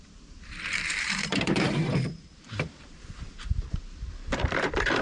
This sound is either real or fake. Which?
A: fake